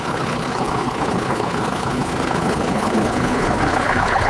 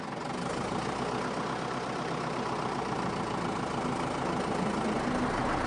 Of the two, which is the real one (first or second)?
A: second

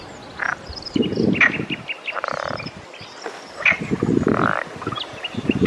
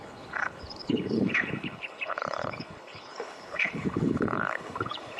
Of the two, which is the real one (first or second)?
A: first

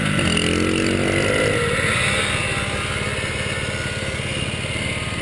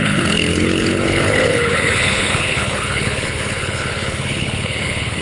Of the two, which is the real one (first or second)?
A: first